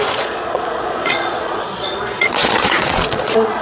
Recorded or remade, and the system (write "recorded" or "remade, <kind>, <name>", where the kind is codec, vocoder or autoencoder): remade, vocoder, Vocos